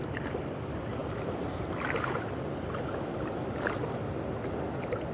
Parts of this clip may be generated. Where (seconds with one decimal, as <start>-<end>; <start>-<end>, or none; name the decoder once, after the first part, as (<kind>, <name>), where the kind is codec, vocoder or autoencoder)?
none